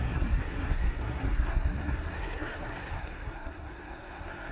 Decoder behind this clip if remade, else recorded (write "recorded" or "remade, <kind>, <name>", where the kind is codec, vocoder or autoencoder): remade, codec, SNAC